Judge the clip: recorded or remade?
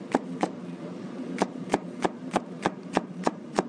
remade